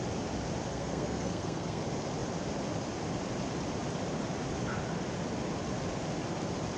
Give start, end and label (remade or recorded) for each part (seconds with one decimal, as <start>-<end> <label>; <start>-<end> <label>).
0.0-0.7 recorded; 0.7-1.8 remade; 1.8-6.8 recorded